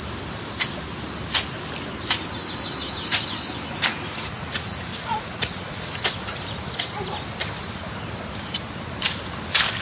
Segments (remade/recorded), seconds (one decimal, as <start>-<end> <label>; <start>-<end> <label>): 0.0-3.9 recorded; 3.9-5.9 remade; 5.9-9.8 recorded